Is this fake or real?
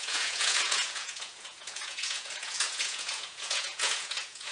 fake